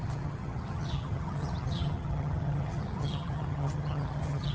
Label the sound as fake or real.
fake